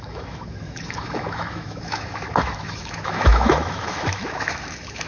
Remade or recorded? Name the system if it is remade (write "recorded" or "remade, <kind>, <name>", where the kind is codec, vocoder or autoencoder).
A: remade, autoencoder, DAC-VAE